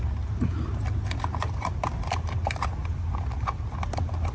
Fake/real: real